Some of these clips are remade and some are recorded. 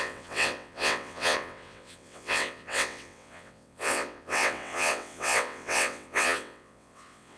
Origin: remade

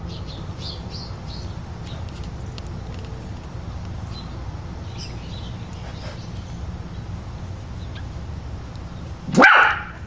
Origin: recorded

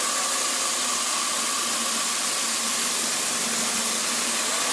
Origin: recorded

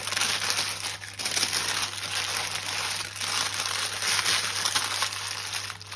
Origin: recorded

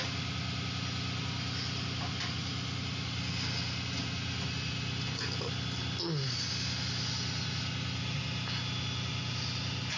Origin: recorded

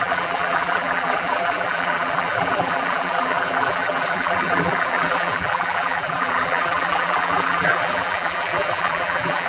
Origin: remade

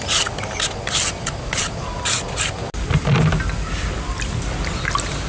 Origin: recorded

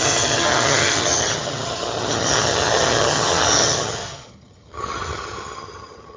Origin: remade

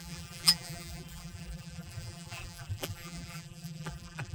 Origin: remade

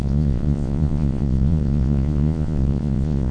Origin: remade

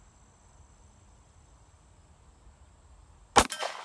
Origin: recorded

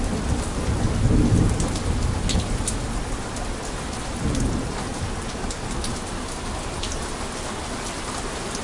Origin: recorded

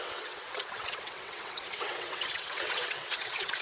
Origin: remade